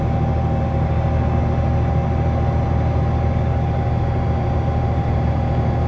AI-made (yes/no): no